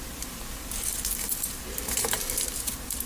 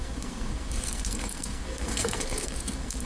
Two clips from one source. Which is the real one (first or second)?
first